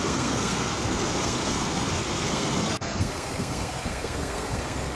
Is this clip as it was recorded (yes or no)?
no